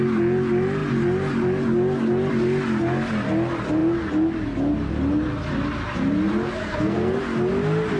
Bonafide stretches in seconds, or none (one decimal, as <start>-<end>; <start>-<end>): 0.0-6.6; 7.2-8.0